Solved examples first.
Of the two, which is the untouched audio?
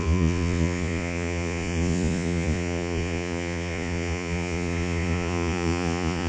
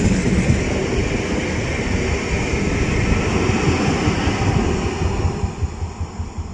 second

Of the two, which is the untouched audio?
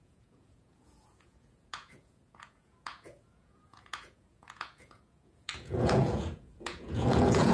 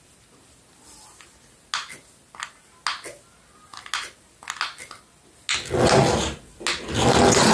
second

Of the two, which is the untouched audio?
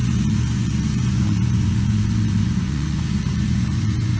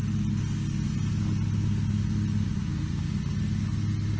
second